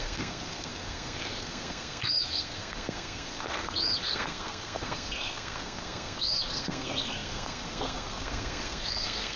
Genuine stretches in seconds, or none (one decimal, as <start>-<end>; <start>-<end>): none